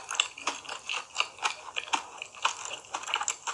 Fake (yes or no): no